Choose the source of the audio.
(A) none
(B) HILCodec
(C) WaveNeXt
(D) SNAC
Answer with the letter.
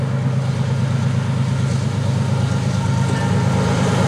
A